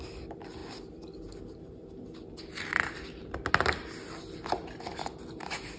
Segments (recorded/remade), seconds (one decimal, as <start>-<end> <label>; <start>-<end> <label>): 0.0-5.8 recorded